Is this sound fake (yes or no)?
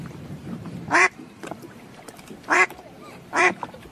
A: yes